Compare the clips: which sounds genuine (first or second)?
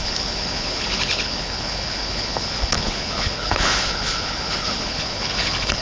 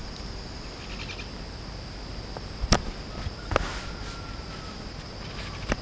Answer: second